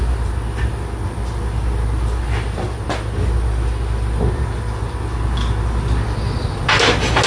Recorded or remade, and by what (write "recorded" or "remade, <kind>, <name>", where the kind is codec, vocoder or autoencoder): recorded